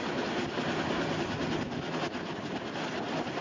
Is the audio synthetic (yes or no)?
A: no